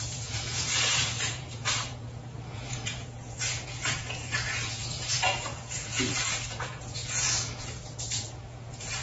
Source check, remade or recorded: remade